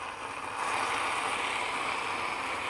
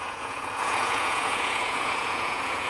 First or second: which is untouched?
first